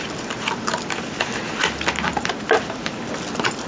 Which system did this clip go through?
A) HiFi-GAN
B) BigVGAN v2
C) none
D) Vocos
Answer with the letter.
C